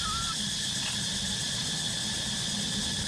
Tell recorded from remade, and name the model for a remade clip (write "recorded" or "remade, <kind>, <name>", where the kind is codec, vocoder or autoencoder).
recorded